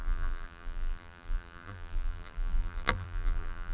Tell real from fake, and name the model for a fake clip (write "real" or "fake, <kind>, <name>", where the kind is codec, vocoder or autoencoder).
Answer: fake, vocoder, BigVGAN v2